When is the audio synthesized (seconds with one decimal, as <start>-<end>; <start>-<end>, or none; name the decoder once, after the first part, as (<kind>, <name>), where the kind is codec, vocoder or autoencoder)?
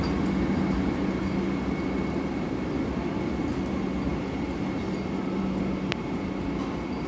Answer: none